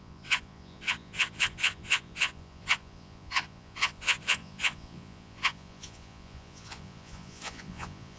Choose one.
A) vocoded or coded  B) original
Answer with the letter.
A